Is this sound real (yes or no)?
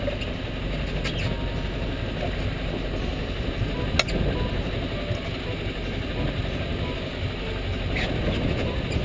yes